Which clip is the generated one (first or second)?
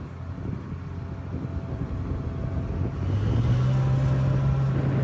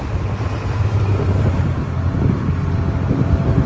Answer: second